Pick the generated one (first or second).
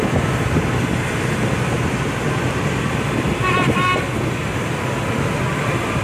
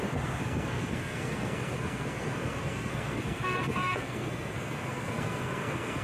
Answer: second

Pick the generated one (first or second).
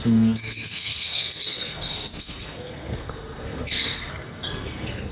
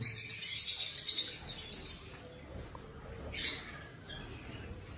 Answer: first